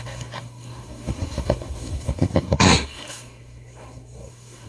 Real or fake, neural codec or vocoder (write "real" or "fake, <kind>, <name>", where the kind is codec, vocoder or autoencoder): fake, codec, SNAC